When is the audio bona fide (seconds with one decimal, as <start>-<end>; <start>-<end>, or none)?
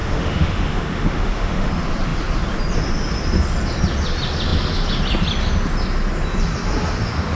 1.7-7.3